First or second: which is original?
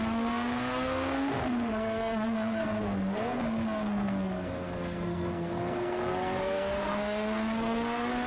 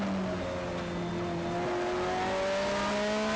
second